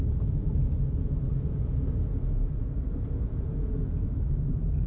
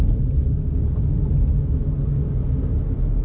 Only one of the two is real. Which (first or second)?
second